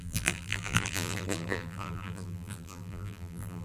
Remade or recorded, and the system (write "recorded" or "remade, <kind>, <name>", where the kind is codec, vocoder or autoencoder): remade, vocoder, BigVGAN v2